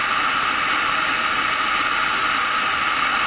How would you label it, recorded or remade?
recorded